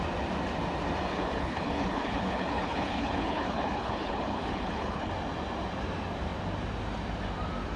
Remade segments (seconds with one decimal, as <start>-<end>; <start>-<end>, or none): 1.1-5.1